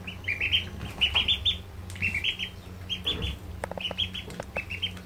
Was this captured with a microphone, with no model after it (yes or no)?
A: yes